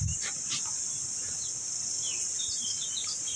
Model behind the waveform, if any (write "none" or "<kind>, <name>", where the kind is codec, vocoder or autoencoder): none